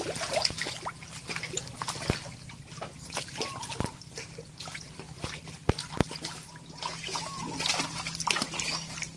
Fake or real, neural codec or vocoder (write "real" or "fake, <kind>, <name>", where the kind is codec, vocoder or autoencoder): real